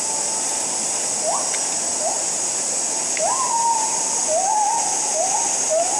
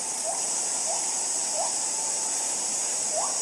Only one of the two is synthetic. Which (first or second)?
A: second